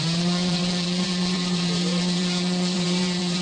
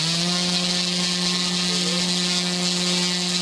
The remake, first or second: first